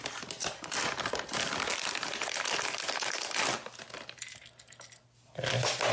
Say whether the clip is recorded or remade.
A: recorded